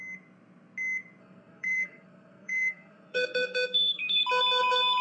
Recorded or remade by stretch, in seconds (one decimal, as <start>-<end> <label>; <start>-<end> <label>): 0.0-1.2 recorded; 1.2-4.2 remade; 4.2-5.0 recorded